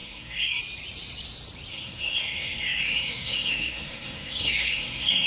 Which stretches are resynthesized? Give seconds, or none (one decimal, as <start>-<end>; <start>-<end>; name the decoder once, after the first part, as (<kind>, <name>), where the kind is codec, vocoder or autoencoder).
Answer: 0.0-0.6 (codec, SNAC); 1.7-5.3